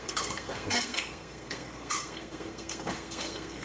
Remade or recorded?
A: remade